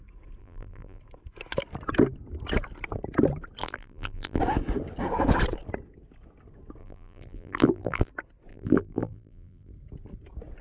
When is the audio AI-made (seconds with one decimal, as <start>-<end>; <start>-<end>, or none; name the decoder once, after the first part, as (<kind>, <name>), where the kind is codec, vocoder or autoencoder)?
0.4-1.0 (vocoder, BigVGAN v2); 3.6-4.4; 6.8-8.1; 8.5-9.7